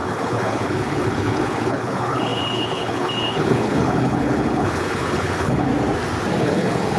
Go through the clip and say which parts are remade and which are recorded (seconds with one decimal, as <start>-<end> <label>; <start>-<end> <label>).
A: 0.0-5.7 remade; 5.7-6.4 recorded; 6.4-7.0 remade